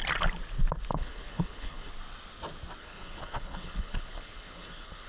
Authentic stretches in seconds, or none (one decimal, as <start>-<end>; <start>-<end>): 0.0-0.9; 1.9-2.8